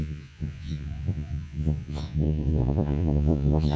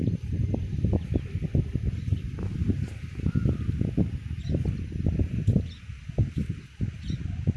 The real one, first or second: second